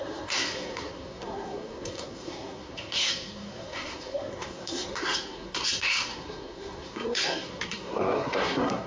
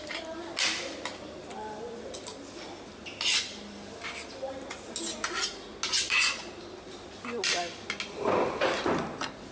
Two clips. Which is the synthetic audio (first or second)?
first